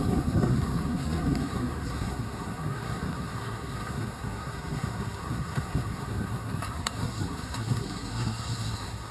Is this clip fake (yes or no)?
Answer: yes